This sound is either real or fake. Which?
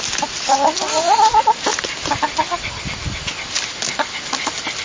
real